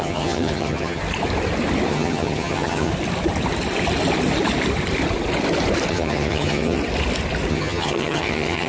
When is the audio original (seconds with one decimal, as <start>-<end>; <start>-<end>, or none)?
1.0-1.9; 2.9-5.9; 6.8-7.5